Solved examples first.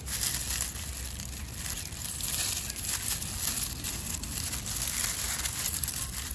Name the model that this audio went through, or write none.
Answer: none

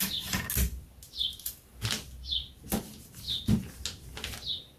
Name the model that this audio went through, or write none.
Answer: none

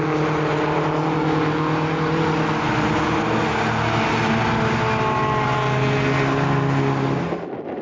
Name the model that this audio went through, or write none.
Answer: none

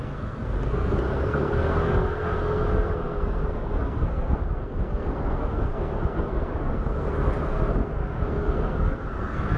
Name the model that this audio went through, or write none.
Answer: codec, SNAC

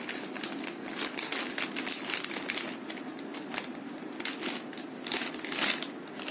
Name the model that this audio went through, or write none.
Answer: none